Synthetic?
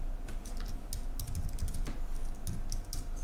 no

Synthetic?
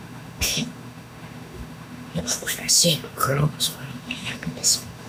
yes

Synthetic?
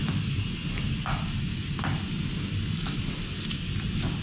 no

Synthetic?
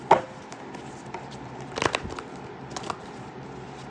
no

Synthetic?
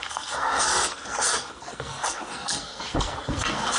yes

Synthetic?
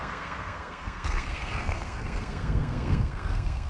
yes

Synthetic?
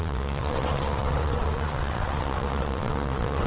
yes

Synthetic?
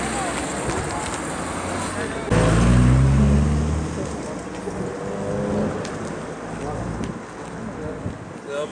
no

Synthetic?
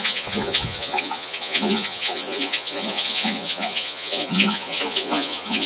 yes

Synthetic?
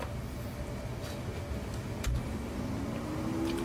no